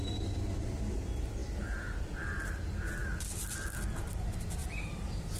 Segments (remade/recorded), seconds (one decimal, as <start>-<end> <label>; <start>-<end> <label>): 0.0-4.6 recorded; 4.6-5.4 remade